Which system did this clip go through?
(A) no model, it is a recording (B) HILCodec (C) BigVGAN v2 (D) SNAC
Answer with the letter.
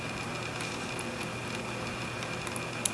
A